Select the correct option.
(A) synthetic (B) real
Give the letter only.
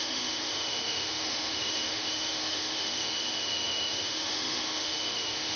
A